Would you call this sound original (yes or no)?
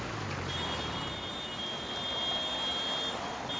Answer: yes